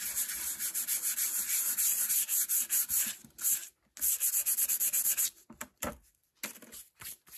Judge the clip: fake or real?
real